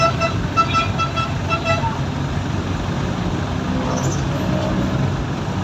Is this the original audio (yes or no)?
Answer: yes